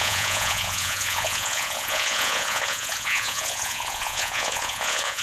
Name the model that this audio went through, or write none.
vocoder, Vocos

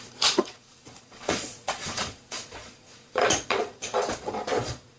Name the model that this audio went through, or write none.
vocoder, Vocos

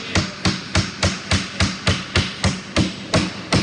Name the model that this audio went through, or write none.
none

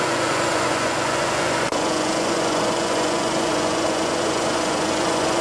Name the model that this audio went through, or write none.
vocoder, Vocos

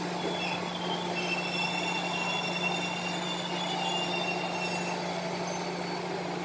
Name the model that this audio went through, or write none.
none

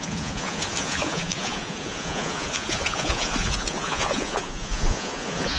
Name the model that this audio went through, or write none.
vocoder, Vocos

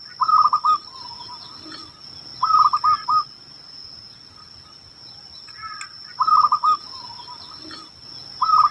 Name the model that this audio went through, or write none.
none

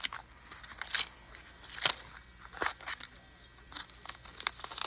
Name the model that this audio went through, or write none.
none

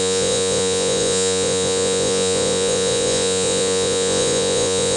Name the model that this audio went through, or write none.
vocoder, Vocos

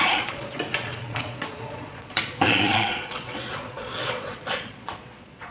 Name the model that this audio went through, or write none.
vocoder, Vocos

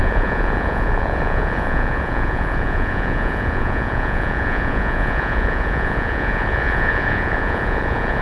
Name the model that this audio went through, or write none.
vocoder, Vocos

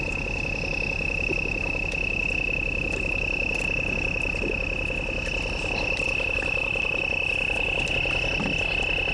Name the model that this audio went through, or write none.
none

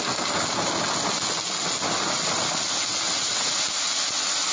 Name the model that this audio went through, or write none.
none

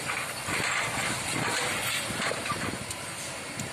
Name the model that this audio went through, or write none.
none